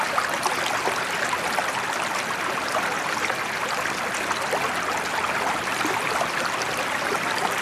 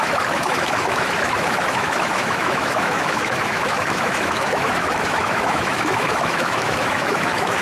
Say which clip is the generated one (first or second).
second